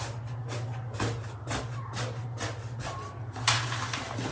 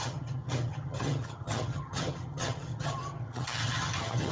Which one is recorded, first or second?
first